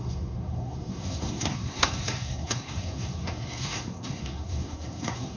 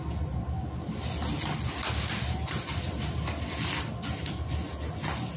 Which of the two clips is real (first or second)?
second